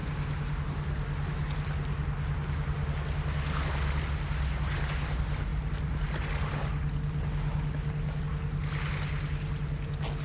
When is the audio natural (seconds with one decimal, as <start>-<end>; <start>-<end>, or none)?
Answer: 0.0-10.2